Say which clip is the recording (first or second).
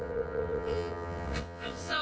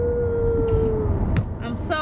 second